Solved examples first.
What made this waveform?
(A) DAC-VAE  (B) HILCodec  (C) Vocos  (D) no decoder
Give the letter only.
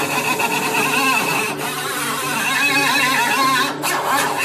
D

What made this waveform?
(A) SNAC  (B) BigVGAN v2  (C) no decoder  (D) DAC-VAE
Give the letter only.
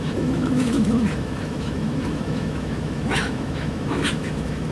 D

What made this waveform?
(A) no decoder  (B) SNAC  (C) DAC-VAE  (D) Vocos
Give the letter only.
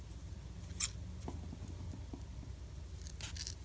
A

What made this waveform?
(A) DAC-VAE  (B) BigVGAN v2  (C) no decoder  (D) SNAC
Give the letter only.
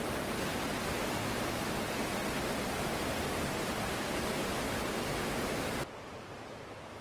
C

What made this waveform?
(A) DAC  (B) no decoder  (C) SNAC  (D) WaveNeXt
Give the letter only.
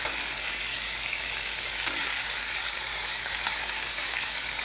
A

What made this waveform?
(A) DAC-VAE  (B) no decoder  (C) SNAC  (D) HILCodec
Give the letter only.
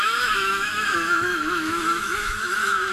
A